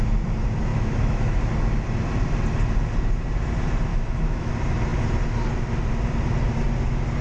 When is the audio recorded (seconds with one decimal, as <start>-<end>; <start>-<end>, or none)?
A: 0.0-0.7; 1.4-3.9; 4.5-7.2